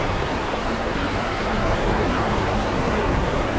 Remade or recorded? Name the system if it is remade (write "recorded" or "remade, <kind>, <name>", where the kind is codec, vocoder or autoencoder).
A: remade, codec, SNAC